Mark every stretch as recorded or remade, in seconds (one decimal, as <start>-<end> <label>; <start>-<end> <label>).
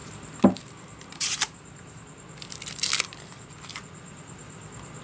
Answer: 0.0-2.0 remade; 2.0-5.0 recorded